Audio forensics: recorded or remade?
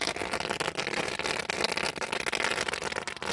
recorded